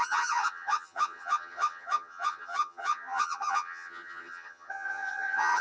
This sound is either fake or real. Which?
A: fake